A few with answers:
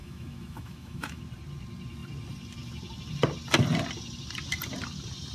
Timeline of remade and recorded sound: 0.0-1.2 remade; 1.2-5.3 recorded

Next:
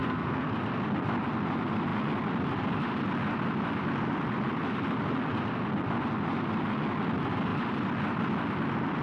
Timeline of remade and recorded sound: 0.0-0.5 remade; 0.5-9.0 recorded